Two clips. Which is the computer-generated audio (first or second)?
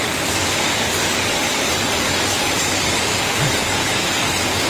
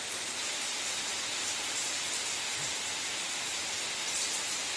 first